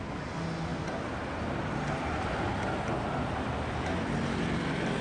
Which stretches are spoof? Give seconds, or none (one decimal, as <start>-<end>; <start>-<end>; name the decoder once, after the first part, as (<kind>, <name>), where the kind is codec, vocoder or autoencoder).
none

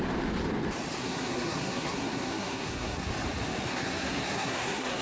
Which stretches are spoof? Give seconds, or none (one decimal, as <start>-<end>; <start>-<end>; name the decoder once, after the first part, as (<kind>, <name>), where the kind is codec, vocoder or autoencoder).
1.0-3.1 (codec, SNAC); 3.7-5.0

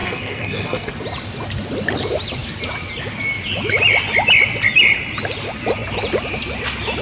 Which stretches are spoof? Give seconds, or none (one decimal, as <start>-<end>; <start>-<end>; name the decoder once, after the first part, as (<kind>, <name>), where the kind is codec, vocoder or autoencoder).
0.0-0.9 (codec, SNAC)

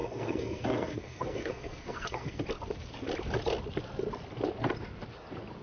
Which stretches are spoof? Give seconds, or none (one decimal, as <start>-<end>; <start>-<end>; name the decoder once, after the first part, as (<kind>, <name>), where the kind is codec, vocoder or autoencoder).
0.0-2.4 (codec, SNAC)